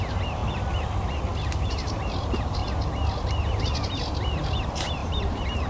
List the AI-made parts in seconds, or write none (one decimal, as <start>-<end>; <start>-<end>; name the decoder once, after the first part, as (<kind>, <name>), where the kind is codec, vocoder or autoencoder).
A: 0.0-0.4 (vocoder, BigVGAN v2); 1.7-2.6; 3.6-5.7